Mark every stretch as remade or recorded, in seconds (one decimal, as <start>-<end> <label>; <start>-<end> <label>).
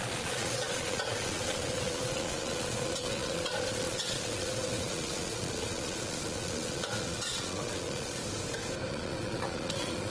0.0-8.2 remade; 8.2-8.9 recorded; 8.9-10.1 remade